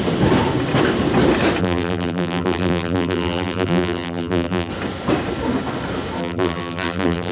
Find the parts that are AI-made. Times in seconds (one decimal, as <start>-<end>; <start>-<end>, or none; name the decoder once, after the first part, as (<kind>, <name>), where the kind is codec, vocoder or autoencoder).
1.6-4.7 (vocoder, BigVGAN v2); 6.2-7.3